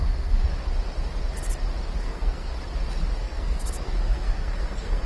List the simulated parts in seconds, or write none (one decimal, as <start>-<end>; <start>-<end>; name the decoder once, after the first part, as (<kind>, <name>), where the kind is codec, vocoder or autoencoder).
0.0-0.4 (codec, SNAC); 2.0-2.5; 3.2-5.1